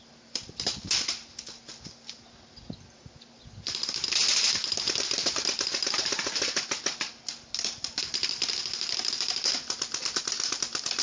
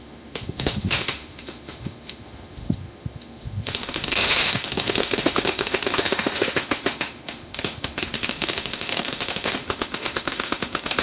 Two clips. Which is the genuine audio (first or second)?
first